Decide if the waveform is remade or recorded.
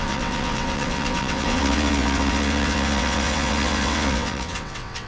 remade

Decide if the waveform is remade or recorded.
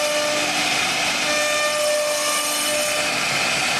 recorded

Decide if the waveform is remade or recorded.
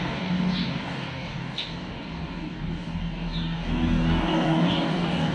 remade